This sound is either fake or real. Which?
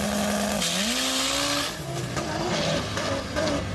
real